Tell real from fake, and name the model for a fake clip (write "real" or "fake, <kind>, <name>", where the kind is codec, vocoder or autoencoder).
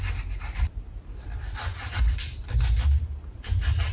real